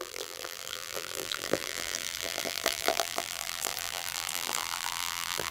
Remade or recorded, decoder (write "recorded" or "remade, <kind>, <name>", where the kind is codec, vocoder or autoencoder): remade, vocoder, BigVGAN v2